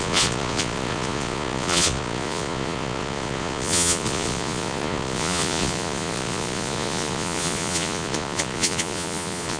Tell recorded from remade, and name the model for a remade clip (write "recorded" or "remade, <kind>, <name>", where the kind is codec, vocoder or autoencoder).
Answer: remade, vocoder, Vocos